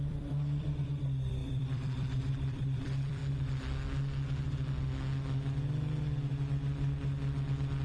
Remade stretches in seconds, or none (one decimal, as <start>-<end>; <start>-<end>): 0.0-3.2